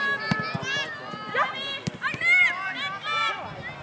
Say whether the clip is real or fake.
real